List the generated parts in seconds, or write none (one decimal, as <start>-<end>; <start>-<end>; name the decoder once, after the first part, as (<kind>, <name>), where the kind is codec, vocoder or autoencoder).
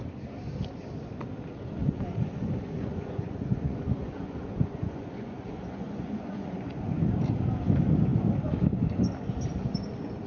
1.8-7.1 (vocoder, Vocos)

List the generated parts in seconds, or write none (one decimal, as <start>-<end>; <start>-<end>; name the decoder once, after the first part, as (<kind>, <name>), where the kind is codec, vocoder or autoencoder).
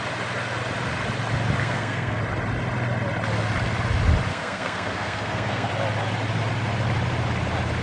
1.6-2.2 (codec, SNAC); 4.3-5.7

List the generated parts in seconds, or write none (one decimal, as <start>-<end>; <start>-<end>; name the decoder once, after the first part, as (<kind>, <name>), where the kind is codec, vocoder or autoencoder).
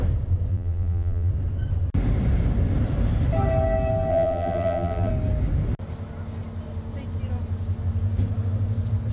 0.5-1.3 (vocoder, BigVGAN v2); 4.1-5.1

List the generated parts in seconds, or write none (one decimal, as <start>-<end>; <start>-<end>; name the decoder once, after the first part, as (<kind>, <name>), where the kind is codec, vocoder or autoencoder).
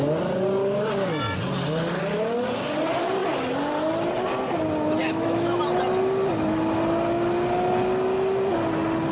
5.0-5.6 (autoencoder, DAC-VAE)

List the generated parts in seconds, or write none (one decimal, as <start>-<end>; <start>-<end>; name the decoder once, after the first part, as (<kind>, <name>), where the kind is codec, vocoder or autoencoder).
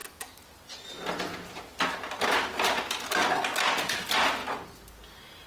none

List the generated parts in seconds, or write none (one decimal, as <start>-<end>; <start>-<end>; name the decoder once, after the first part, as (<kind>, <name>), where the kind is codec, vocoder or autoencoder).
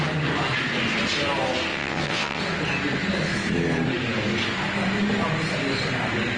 1.7-2.4 (vocoder, WaveNeXt)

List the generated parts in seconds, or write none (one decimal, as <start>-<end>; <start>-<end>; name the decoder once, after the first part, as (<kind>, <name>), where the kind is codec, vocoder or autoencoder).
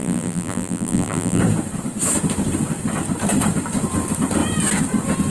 0.0-1.4 (vocoder, BigVGAN v2)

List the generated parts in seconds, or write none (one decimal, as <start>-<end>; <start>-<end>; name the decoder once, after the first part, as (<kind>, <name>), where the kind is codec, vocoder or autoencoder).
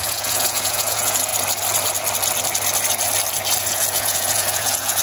0.0-1.3 (vocoder, Vocos); 3.6-5.0